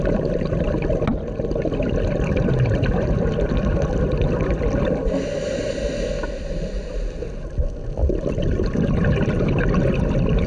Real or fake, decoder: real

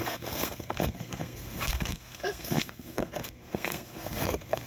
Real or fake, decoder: fake, codec, SNAC